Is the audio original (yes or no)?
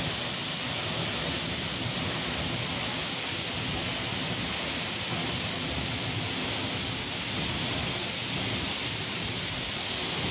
yes